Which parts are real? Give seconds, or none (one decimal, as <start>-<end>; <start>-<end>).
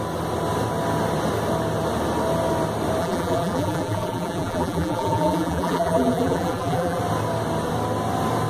0.0-3.0; 7.0-8.5